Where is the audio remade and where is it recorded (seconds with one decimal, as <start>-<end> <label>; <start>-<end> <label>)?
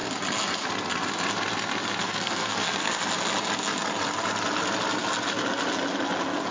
0.0-2.0 recorded; 2.0-3.0 remade; 3.0-6.5 recorded